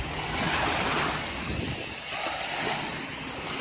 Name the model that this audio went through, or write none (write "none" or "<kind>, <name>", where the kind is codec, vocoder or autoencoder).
none